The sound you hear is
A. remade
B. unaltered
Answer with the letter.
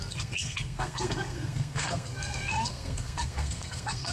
A